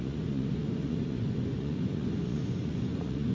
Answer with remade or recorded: remade